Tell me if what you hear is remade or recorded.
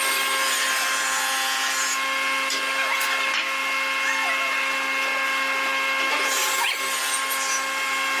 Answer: recorded